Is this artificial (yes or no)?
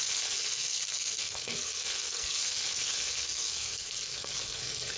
yes